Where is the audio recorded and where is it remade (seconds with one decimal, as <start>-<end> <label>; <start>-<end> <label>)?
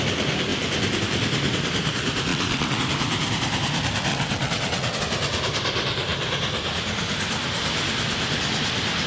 0.0-2.3 recorded; 2.3-2.8 remade; 2.8-4.1 recorded; 4.1-5.0 remade; 5.0-9.1 recorded